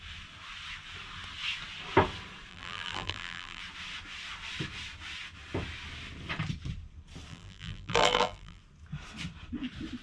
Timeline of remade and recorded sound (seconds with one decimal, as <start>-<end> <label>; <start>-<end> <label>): 0.0-2.5 recorded; 2.5-3.6 remade; 3.6-7.3 recorded; 7.3-8.6 remade; 8.6-10.0 recorded